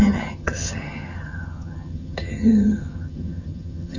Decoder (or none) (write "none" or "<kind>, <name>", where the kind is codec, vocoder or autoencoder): vocoder, HiFi-GAN